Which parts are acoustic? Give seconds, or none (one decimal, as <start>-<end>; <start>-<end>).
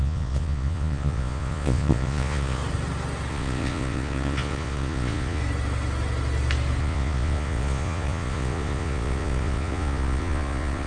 2.6-3.3; 5.4-6.8